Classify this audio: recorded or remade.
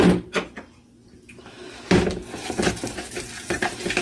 recorded